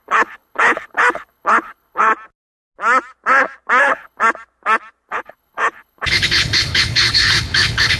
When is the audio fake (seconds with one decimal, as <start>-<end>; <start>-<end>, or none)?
0.0-2.1; 3.8-4.2; 5.1-8.0